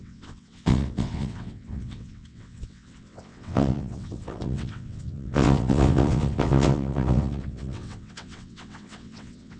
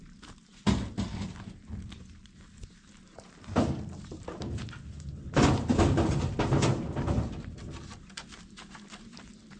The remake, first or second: first